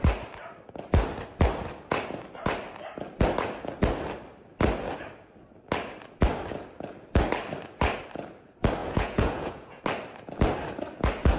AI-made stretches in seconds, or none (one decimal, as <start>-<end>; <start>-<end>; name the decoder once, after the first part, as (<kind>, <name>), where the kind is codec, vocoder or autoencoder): 8.8-9.8 (vocoder, Vocos)